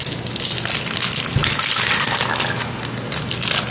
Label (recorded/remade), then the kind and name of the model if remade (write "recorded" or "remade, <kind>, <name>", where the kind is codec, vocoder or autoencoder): recorded